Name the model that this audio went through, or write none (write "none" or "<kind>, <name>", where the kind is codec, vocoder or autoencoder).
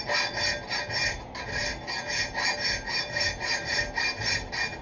none